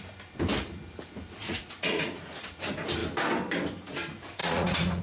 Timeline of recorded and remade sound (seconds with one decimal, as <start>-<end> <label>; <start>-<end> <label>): 0.0-1.4 recorded; 1.4-2.4 remade; 2.4-4.4 recorded; 4.4-5.0 remade